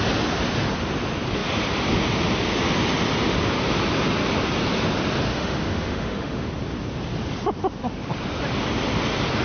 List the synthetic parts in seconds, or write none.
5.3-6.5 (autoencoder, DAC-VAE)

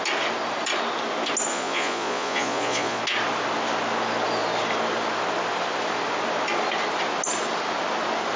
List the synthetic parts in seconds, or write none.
1.5-3.0 (vocoder, Vocos)

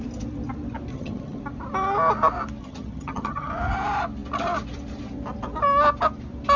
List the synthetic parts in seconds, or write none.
0.9-1.4 (vocoder, HiFi-GAN); 2.6-3.5

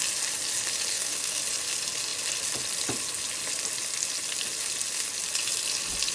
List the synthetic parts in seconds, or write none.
0.9-1.4 (codec, SNAC)

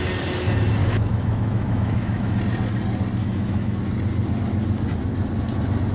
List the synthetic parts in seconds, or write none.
0.8-2.4 (autoencoder, DAC-VAE); 3.2-3.8